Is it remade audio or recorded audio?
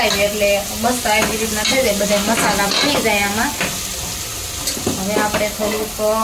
recorded